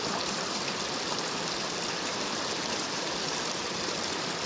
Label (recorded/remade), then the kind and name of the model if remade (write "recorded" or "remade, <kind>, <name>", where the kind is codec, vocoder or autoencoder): recorded